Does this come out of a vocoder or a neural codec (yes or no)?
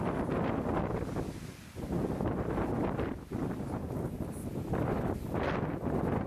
no